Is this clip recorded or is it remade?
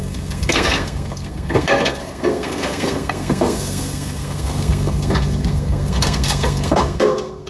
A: remade